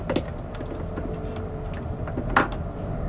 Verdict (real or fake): real